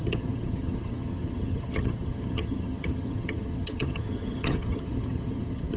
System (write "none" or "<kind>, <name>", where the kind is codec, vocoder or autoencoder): vocoder, HiFi-GAN